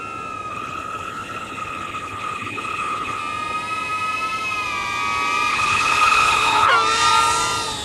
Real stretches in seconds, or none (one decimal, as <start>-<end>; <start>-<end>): 0.0-0.5; 3.2-5.5; 6.7-7.8